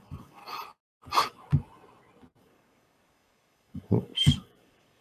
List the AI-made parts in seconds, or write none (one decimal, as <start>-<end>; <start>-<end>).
0.0-0.4; 2.4-5.0